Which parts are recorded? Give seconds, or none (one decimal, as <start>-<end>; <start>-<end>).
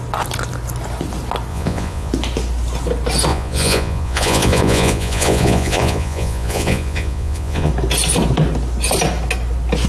0.0-1.5; 2.1-3.3; 7.7-9.9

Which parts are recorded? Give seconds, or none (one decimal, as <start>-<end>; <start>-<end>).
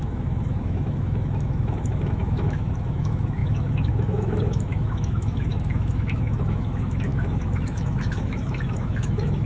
none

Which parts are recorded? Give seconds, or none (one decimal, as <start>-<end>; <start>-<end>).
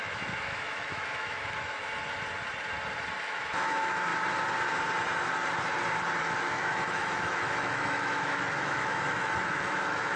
1.8-3.2; 4.1-6.2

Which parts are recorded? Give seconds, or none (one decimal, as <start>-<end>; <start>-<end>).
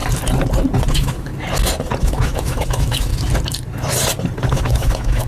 0.0-0.9; 1.3-2.0; 3.1-4.5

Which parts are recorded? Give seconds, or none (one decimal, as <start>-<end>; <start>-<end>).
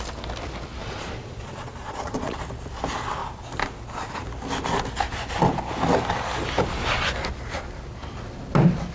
0.0-0.8; 2.4-8.9